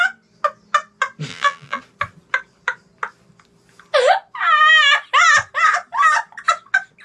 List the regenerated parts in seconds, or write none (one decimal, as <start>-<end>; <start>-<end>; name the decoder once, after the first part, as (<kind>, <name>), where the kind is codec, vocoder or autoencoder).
1.3-1.8 (vocoder, BigVGAN v2)